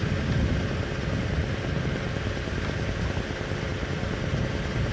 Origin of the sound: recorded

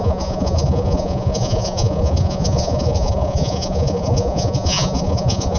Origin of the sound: remade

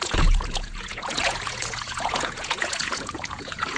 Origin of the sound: remade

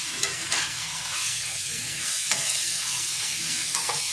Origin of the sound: remade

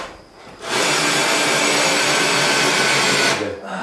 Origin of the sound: recorded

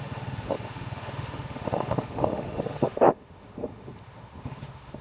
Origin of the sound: remade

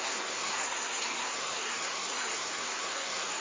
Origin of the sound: remade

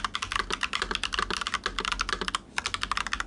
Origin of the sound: recorded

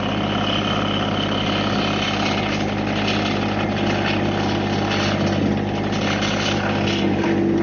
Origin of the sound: recorded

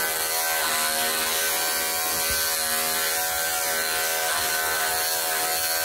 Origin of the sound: recorded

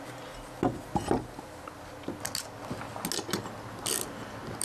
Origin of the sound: recorded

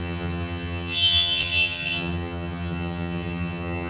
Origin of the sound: remade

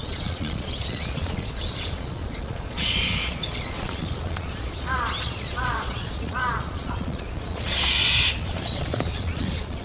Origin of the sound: remade